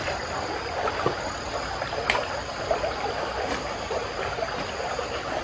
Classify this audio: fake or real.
real